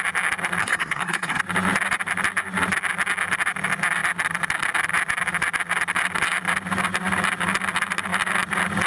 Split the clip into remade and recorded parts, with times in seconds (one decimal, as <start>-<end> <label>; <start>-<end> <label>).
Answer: 0.0-0.6 recorded; 0.6-1.4 remade; 1.4-8.9 recorded